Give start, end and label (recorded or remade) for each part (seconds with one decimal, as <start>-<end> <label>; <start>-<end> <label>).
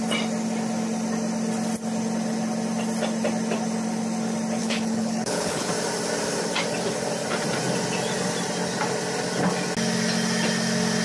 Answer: 0.0-4.6 recorded; 4.6-5.7 remade; 5.7-11.0 recorded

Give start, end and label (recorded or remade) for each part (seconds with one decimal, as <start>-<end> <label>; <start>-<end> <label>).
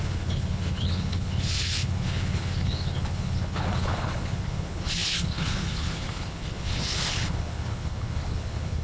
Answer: 0.0-8.8 remade